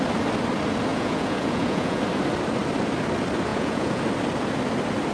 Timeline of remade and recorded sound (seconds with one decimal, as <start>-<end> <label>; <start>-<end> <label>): 0.0-0.9 recorded; 0.9-2.0 remade; 2.0-3.5 recorded; 3.5-4.0 remade; 4.0-5.1 recorded

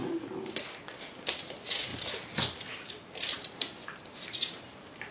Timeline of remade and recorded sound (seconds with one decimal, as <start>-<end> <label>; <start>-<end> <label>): 0.0-1.9 recorded; 1.9-5.1 remade

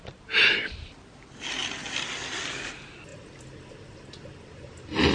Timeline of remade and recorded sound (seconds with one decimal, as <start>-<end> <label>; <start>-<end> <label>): 0.0-5.1 recorded

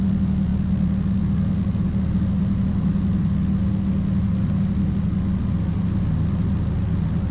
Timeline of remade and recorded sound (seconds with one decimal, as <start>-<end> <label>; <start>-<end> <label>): 0.0-7.3 recorded